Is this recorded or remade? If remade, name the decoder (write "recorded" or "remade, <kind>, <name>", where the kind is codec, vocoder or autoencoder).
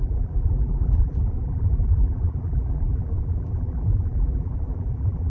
remade, vocoder, BigVGAN v2